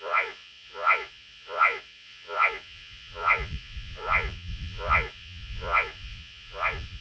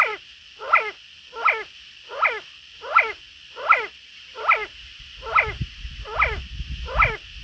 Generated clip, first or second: first